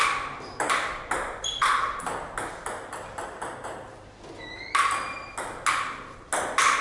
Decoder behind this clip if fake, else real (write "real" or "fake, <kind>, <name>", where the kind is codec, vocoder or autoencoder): real